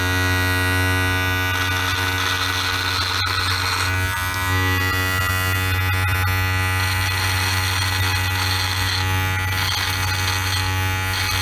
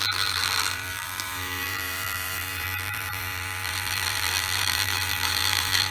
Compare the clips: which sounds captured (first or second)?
first